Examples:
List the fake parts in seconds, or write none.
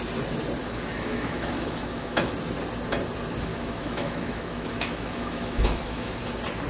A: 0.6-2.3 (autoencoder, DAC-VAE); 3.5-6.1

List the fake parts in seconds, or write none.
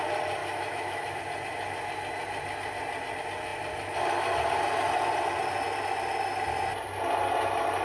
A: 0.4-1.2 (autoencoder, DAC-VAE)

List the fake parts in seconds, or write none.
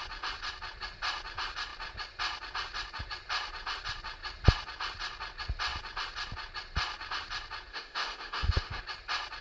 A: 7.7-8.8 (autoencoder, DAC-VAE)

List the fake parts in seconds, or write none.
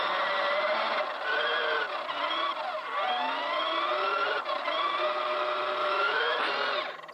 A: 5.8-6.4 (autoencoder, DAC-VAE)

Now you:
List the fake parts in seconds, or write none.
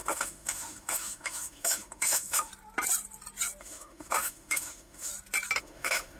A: 0.0-2.5 (autoencoder, DAC-VAE); 3.6-5.1; 5.6-6.2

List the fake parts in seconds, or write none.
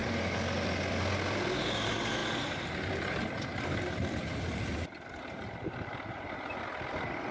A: none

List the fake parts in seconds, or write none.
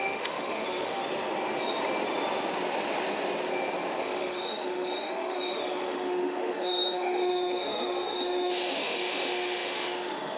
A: 0.0-1.0 (autoencoder, DAC-VAE); 4.0-10.4